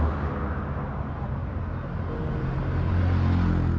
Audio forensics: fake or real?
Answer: real